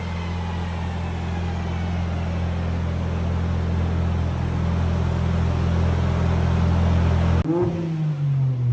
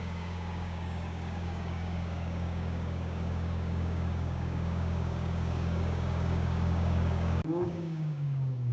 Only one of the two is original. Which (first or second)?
first